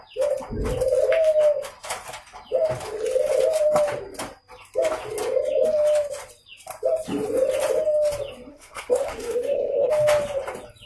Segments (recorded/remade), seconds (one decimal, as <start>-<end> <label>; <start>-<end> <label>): 0.0-8.5 recorded; 8.5-9.9 remade; 9.9-10.9 recorded